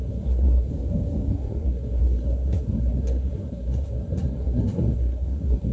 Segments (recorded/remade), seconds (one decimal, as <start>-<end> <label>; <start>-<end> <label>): 0.0-0.7 remade; 0.7-1.3 recorded; 1.3-5.7 remade